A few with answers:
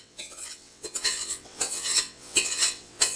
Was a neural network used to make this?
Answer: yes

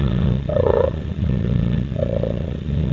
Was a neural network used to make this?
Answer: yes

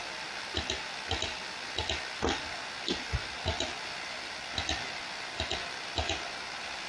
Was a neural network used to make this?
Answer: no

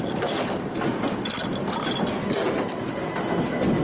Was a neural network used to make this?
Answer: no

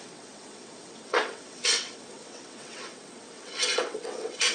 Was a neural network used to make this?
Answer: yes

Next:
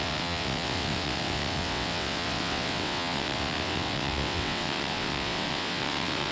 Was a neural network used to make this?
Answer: yes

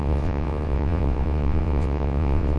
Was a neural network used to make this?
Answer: yes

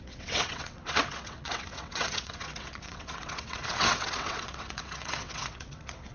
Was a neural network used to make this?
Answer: yes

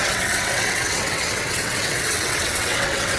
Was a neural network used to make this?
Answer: yes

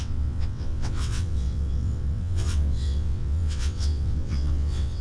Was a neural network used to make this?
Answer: yes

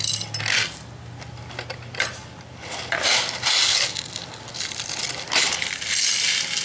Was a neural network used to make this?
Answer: no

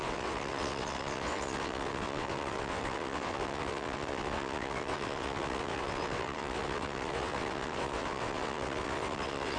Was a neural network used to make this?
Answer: yes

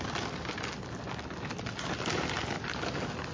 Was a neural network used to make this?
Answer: no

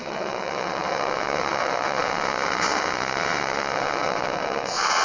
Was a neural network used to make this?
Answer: yes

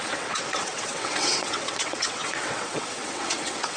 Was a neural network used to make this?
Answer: yes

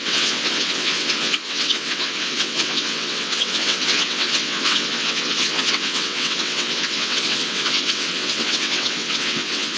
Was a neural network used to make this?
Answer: yes